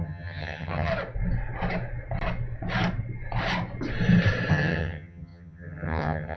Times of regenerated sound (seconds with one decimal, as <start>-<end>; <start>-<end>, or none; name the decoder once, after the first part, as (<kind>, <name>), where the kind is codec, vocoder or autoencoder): 0.0-0.9 (vocoder, HiFi-GAN); 4.5-6.4